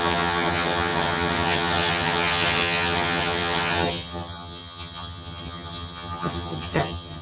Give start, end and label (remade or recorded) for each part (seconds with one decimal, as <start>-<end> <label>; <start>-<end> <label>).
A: 0.0-7.2 remade